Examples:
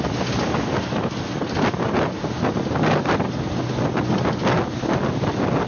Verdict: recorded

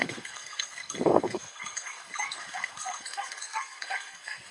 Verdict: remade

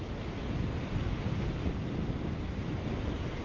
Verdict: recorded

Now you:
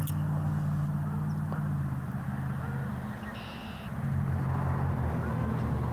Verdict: recorded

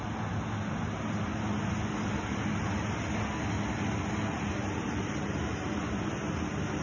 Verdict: recorded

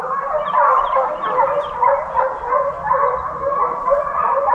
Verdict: recorded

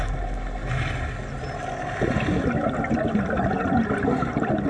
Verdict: recorded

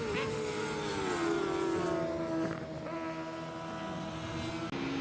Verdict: recorded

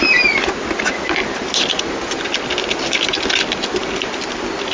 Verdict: recorded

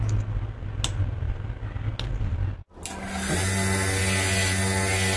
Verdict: recorded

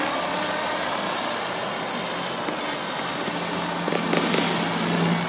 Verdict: recorded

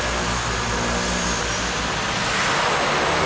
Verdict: recorded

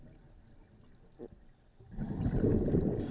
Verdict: recorded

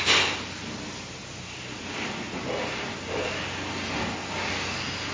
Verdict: recorded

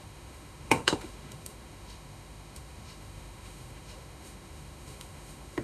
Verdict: remade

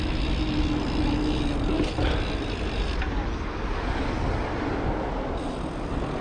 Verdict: recorded